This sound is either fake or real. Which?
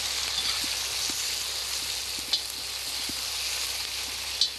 real